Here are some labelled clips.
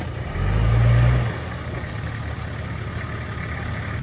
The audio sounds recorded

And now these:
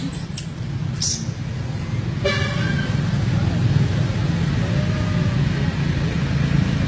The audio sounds recorded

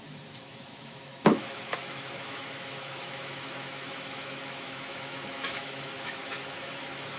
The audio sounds remade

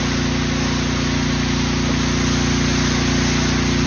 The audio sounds recorded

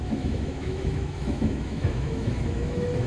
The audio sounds remade